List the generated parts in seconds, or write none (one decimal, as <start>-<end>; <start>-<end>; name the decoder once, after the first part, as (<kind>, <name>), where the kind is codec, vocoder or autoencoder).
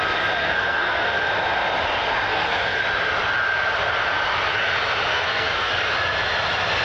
0.4-1.3 (codec, SNAC); 2.3-2.8; 5.1-5.7